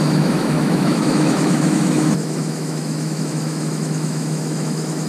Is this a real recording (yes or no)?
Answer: no